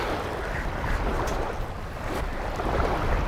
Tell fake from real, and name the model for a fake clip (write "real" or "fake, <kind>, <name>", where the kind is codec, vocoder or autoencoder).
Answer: fake, vocoder, BigVGAN v2